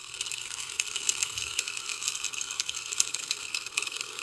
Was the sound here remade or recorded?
remade